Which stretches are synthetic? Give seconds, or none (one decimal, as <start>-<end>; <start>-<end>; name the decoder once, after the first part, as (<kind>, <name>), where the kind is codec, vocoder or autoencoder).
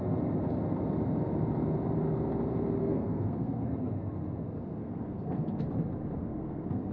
2.8-3.8 (codec, SNAC); 4.8-5.6; 6.2-6.9